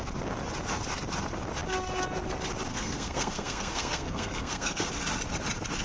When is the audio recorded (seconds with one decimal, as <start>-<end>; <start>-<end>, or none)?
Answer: 0.0-2.7; 4.9-5.8